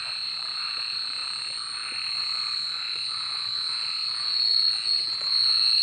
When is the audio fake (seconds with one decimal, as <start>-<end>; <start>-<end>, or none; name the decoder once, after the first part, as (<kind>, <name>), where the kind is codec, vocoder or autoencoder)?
0.0-5.8 (vocoder, Vocos)